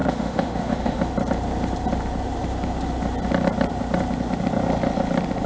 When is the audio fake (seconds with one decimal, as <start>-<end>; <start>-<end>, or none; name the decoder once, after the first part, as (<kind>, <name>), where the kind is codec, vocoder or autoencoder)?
0.0-1.0 (autoencoder, DAC-VAE)